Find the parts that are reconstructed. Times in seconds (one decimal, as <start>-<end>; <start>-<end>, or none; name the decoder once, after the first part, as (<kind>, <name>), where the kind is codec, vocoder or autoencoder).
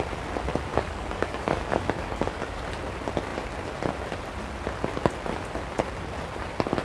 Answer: 0.7-2.6 (codec, DAC)